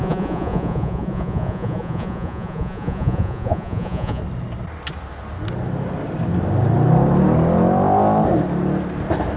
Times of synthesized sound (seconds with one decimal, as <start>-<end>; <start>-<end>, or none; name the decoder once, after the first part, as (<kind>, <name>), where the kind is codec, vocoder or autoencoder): 0.0-4.2 (vocoder, Vocos)